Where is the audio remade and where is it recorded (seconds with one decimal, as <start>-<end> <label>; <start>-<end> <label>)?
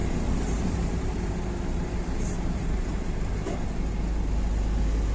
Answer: 0.0-3.1 remade; 3.1-5.1 recorded